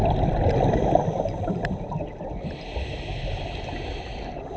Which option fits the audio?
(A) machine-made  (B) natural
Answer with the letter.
B